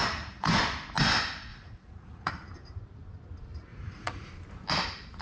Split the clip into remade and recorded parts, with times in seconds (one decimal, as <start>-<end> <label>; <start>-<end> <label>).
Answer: 0.0-0.6 remade; 0.6-1.5 recorded; 1.5-2.3 remade; 2.3-3.7 recorded; 3.7-4.3 remade; 4.3-5.2 recorded

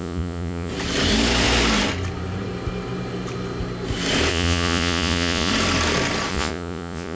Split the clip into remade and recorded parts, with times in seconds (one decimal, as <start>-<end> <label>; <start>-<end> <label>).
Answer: 0.0-0.7 remade; 0.7-4.3 recorded; 4.3-5.5 remade; 5.5-6.3 recorded; 6.3-7.2 remade

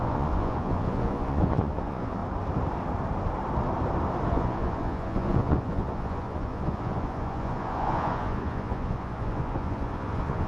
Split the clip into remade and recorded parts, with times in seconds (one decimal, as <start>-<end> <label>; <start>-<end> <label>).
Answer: 0.0-2.2 remade; 2.2-4.3 recorded; 4.3-10.5 remade

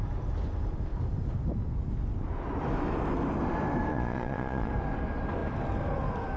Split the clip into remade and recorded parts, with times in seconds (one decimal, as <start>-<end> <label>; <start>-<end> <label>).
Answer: 0.0-3.9 recorded; 3.9-4.7 remade; 4.7-6.4 recorded

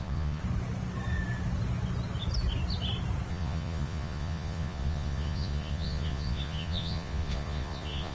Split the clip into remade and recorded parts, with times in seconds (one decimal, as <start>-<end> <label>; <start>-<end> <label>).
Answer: 0.0-0.4 remade; 0.4-3.3 recorded; 3.3-8.1 remade

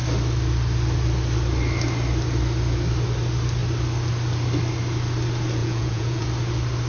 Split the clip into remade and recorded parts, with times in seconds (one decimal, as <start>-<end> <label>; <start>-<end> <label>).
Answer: 0.0-5.6 recorded; 5.6-6.2 remade; 6.2-6.9 recorded

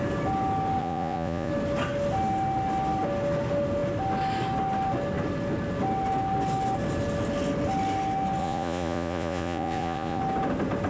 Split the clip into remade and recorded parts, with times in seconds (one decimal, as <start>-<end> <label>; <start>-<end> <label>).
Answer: 0.0-0.8 recorded; 0.8-1.5 remade; 1.5-8.4 recorded; 8.4-10.2 remade; 10.2-10.9 recorded

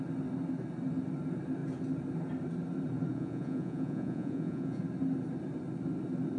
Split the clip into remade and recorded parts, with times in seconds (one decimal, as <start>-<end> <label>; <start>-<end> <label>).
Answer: 0.0-3.1 recorded; 3.1-4.8 remade; 4.8-6.4 recorded